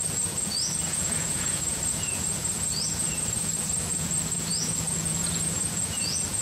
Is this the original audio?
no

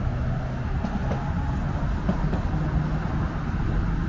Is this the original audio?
yes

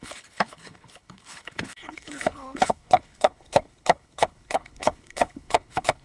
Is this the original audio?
no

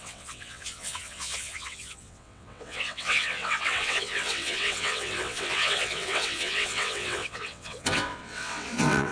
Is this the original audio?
no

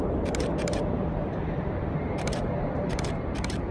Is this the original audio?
no